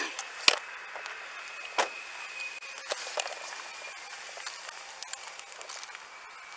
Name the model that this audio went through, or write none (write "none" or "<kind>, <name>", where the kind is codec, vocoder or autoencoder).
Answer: none